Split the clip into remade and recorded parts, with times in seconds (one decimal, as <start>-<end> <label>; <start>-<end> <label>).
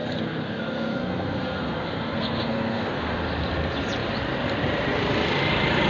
0.0-3.2 remade; 3.2-5.9 recorded